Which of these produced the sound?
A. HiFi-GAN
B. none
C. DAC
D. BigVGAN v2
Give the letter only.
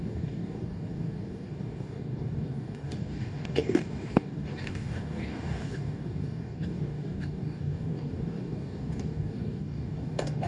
C